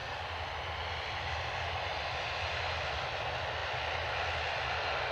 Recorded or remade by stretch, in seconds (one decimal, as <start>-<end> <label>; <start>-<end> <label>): 0.0-5.1 recorded